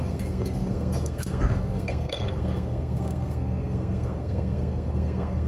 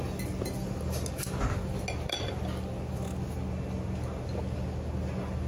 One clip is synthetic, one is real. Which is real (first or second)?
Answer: second